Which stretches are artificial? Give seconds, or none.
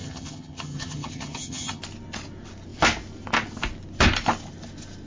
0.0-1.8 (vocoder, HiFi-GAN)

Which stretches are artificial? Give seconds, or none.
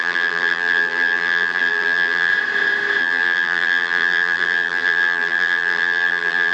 0.0-2.3 (vocoder, BigVGAN v2); 3.0-6.5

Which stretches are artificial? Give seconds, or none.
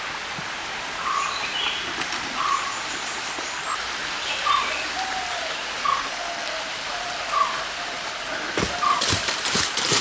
5.8-6.6 (codec, SNAC)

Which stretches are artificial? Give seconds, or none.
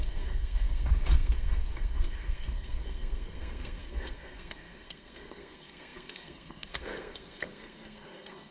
0.0-8.5 (codec, SNAC)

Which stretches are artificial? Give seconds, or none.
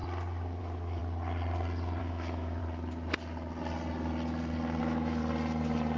0.6-1.0 (autoencoder, DAC-VAE); 2.0-2.6; 4.8-5.2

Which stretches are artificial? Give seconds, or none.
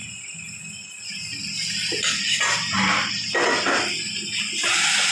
none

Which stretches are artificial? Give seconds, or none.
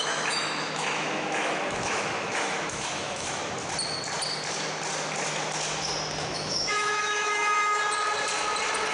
0.0-3.4 (autoencoder, DAC-VAE); 6.2-7.8